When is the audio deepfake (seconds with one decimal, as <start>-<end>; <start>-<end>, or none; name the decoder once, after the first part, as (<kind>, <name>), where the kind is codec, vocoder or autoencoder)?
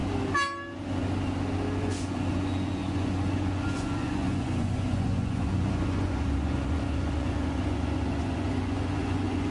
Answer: 1.8-9.5 (vocoder, Vocos)